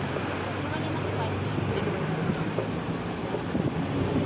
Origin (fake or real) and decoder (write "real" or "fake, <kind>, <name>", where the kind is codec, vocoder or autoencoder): fake, vocoder, BigVGAN v2